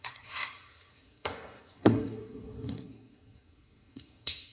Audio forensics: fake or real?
fake